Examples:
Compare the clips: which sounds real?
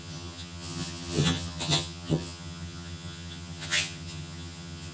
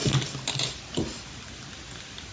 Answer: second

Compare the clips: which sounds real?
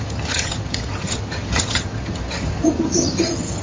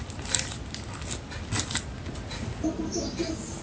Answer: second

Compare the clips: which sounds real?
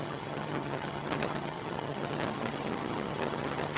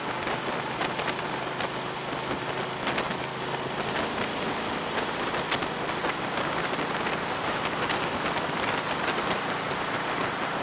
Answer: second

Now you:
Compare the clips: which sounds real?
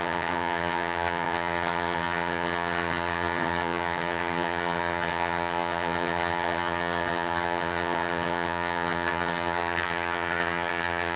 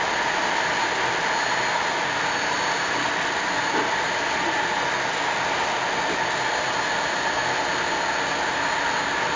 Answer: second